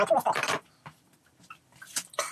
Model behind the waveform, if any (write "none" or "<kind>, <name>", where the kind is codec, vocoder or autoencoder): vocoder, BigVGAN v2